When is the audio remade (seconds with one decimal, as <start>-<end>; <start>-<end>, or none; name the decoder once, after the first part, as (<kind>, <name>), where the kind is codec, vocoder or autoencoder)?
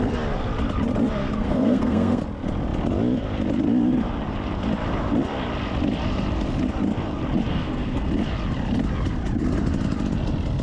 1.2-2.2 (codec, SNAC); 7.5-8.1